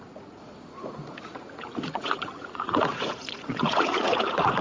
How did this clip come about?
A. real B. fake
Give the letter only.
B